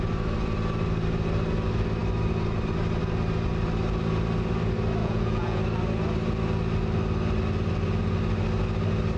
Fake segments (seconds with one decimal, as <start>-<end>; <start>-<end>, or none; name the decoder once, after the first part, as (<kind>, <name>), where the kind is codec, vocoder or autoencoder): 5.0-5.6 (vocoder, Vocos)